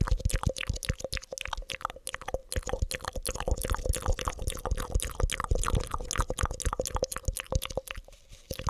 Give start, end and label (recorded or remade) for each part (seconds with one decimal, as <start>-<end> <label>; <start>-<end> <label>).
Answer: 0.0-8.7 recorded